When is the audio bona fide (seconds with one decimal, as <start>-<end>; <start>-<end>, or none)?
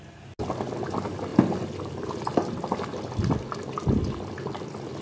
0.0-5.0